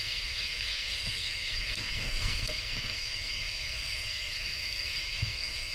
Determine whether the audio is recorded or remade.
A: remade